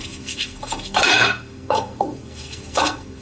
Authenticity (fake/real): fake